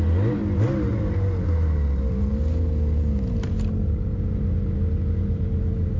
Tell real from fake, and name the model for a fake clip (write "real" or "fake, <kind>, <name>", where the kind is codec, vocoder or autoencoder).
real